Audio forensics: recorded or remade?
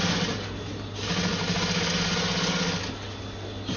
recorded